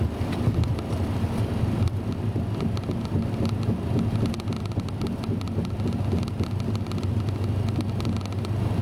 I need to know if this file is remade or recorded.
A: recorded